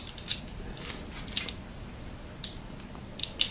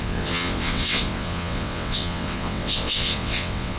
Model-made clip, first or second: second